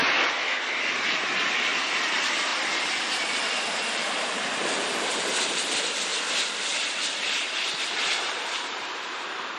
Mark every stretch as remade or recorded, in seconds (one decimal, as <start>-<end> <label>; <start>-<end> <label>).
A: 0.0-1.1 recorded; 1.1-6.1 remade; 6.1-6.7 recorded; 6.7-9.6 remade